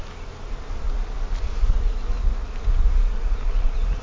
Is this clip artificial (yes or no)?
no